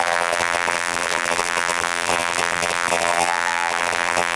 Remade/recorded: remade